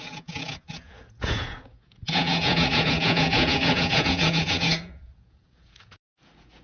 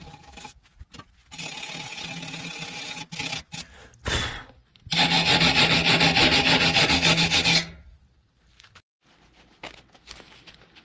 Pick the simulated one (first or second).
first